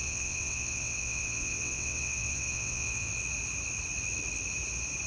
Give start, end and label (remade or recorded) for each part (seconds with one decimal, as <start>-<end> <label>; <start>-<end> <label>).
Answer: 0.0-3.1 remade; 3.1-5.1 recorded